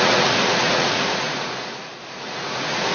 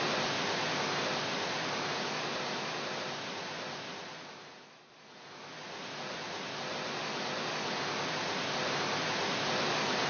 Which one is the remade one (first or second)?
first